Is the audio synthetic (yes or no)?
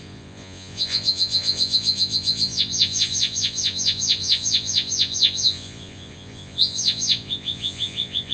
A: yes